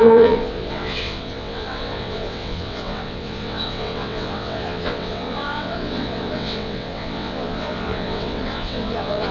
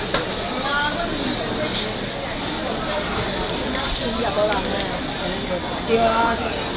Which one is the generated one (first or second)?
first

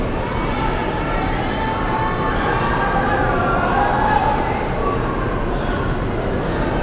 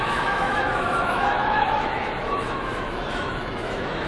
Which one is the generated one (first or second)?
second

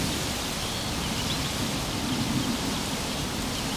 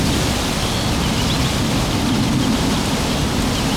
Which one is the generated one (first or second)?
first